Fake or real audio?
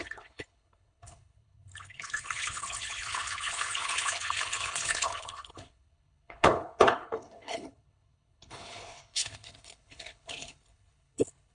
fake